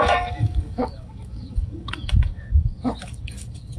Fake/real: fake